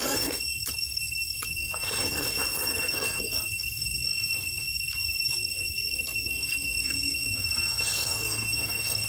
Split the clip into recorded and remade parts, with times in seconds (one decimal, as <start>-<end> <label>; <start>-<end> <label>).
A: 0.0-9.1 remade

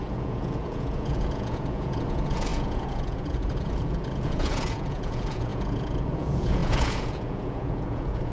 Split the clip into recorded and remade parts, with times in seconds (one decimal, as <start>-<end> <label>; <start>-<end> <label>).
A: 0.0-8.3 remade

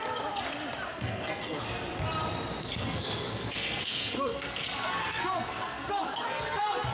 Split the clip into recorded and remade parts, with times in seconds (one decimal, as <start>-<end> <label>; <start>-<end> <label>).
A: 0.0-0.9 recorded; 0.9-1.6 remade; 1.6-2.6 recorded; 2.6-6.9 remade